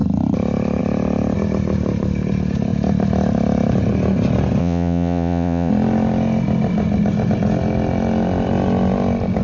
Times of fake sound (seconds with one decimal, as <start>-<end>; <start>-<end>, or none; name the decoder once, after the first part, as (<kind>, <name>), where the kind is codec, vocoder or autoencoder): 4.6-5.7 (vocoder, Vocos)